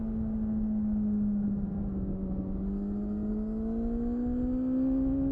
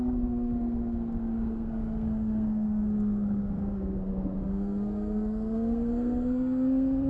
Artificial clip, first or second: second